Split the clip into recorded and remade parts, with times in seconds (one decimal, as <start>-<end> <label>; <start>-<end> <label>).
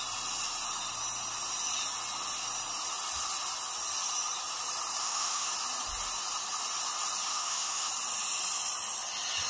0.0-5.0 recorded; 5.0-5.5 remade; 5.5-7.3 recorded; 7.3-7.9 remade; 7.9-9.5 recorded